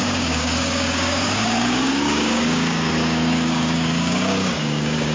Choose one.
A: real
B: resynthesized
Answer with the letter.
B